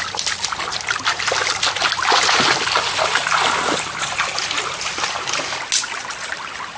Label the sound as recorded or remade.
recorded